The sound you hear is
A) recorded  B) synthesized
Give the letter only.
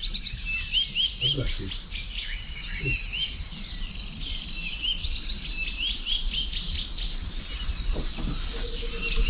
A